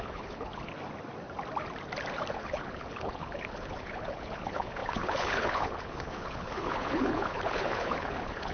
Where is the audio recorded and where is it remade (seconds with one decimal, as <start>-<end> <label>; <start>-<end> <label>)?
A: 0.0-0.7 remade; 0.7-2.3 recorded; 2.3-8.5 remade